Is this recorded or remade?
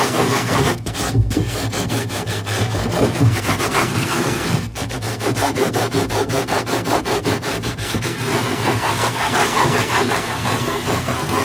remade